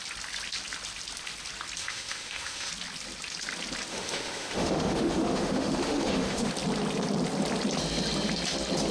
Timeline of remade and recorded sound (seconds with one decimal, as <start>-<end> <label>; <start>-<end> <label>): 0.0-1.8 recorded; 1.8-2.7 remade; 2.7-3.9 recorded; 3.9-6.5 remade; 6.5-8.9 recorded